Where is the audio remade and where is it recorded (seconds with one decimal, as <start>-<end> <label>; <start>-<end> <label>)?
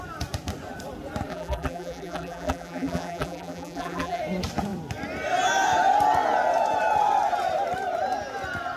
0.0-1.3 recorded; 1.3-4.2 remade; 4.2-8.8 recorded